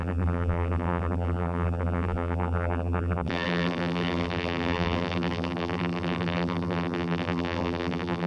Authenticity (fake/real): fake